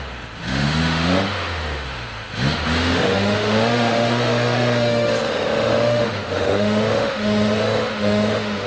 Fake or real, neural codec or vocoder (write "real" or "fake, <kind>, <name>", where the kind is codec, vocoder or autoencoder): fake, autoencoder, DAC-VAE